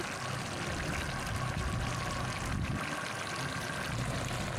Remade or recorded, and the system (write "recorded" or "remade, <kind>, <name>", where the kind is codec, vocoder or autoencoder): recorded